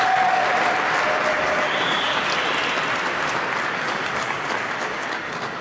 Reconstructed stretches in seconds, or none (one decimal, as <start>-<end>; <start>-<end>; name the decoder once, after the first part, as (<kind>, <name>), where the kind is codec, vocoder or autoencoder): 0.0-0.4 (codec, DAC); 1.3-2.3; 3.6-5.6